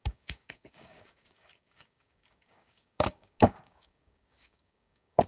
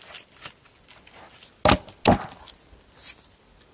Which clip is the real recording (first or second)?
second